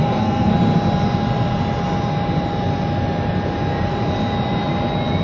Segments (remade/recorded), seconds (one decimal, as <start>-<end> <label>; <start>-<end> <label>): 0.0-0.5 remade; 0.5-5.2 recorded